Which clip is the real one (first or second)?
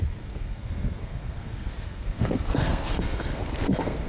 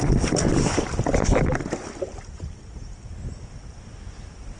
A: second